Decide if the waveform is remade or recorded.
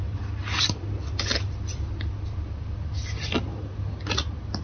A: recorded